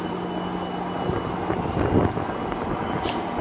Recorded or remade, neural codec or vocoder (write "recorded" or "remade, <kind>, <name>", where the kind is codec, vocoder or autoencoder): recorded